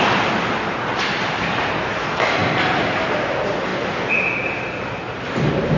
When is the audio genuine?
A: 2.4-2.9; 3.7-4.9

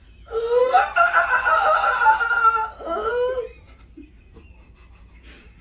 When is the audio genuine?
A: 0.0-0.6; 1.2-5.6

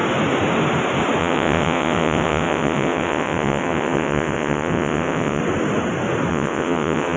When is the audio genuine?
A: 0.0-1.2; 5.4-6.3